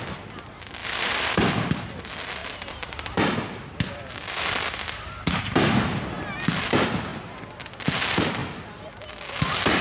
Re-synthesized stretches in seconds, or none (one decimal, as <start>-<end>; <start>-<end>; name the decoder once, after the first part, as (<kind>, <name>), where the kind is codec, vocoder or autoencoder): 0.8-1.7 (vocoder, BigVGAN v2); 2.4-4.4